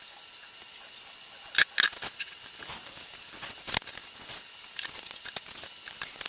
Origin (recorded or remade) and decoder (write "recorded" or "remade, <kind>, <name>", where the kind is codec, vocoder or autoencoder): recorded